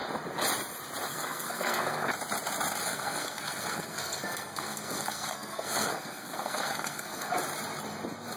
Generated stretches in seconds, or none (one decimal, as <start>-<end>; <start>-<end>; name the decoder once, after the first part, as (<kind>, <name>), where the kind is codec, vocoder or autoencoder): 1.1-2.1 (codec, SNAC); 2.8-7.3